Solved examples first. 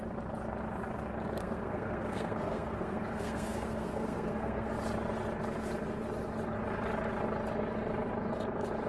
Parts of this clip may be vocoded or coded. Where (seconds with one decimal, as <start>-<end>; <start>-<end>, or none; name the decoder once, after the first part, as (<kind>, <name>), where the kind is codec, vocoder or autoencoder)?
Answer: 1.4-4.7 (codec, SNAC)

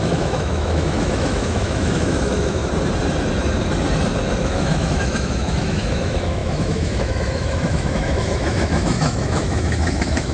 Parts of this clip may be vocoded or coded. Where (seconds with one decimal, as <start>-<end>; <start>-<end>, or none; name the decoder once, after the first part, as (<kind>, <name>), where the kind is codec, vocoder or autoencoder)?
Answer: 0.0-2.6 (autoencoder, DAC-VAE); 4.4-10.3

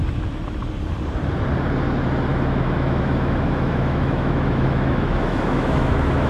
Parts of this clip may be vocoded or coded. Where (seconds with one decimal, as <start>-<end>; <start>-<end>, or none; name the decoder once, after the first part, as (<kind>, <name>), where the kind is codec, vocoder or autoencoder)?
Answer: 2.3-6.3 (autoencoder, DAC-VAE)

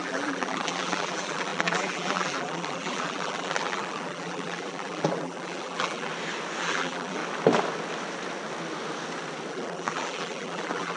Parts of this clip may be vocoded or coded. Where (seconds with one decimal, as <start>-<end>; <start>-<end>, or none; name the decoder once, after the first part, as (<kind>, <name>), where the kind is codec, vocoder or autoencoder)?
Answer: 0.0-6.1 (vocoder, BigVGAN v2); 6.6-7.2; 9.5-11.0

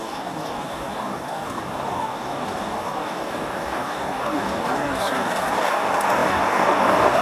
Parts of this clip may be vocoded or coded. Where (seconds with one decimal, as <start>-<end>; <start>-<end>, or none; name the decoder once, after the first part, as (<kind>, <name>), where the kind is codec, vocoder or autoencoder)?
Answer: 0.0-7.2 (codec, DAC)

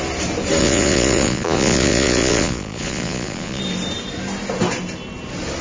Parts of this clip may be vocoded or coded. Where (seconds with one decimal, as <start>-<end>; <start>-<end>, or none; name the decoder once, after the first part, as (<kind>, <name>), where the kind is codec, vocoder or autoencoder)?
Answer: 0.6-3.6 (vocoder, Vocos)

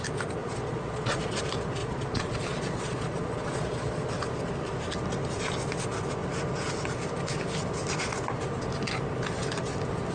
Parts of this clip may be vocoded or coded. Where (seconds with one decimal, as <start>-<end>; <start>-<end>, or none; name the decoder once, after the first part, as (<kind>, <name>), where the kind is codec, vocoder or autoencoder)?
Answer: 0.4-1.4 (vocoder, Vocos); 1.8-4.1

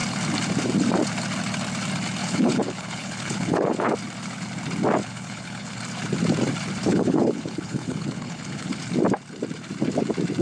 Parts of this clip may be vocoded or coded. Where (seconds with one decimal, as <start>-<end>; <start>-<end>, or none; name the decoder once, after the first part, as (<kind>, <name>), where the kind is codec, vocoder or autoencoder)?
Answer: 2.2-3.9 (codec, HILCodec); 5.0-5.8; 6.9-8.8